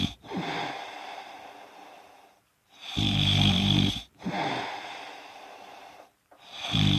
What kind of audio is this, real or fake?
fake